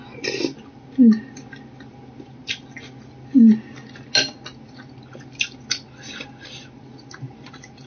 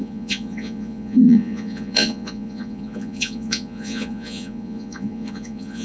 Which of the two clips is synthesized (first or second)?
second